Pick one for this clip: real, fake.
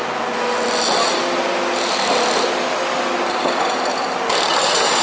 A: real